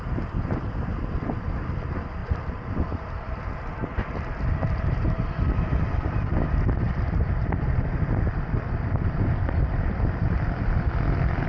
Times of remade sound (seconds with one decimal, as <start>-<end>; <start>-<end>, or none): 0.0-0.9; 1.4-11.5